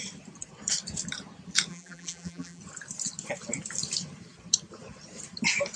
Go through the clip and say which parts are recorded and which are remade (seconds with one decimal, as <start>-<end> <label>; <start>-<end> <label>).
0.0-1.7 recorded; 1.7-2.6 remade; 2.6-5.8 recorded